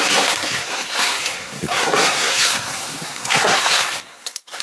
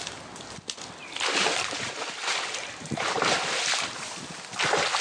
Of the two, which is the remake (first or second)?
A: first